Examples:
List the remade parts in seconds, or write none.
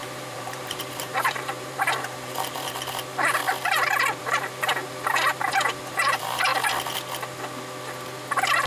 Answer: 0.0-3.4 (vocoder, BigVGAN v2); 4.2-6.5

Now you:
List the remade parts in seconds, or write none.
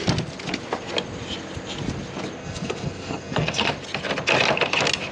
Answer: 2.4-3.7 (codec, SNAC)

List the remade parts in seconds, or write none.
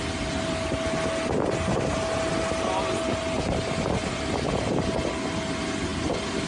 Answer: 2.3-4.9 (vocoder, BigVGAN v2)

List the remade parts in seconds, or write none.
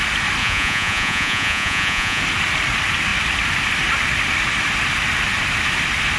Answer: 0.4-2.2 (vocoder, Vocos)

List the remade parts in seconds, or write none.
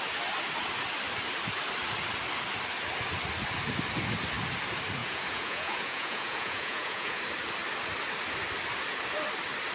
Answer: 5.0-7.2 (vocoder, Vocos)